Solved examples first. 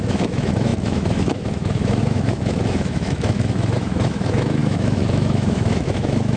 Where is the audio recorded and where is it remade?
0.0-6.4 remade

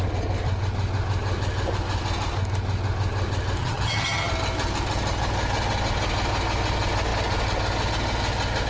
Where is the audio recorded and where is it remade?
0.0-3.6 recorded; 3.6-4.3 remade; 4.3-8.7 recorded

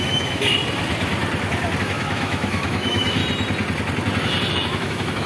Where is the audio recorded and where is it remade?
0.0-0.6 remade; 0.6-1.8 recorded; 1.8-3.2 remade; 3.2-4.5 recorded; 4.5-5.3 remade

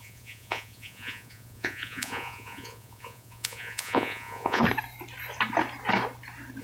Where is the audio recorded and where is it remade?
0.0-4.6 remade; 4.6-6.6 recorded

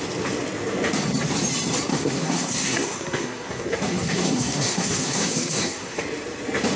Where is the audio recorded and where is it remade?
0.0-1.9 recorded; 1.9-6.0 remade; 6.0-6.8 recorded

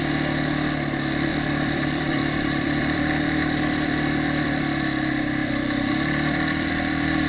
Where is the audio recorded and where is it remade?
0.0-1.3 recorded; 1.3-4.6 remade; 4.6-5.4 recorded; 5.4-7.3 remade